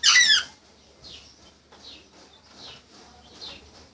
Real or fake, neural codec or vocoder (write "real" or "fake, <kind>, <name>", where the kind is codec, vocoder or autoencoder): real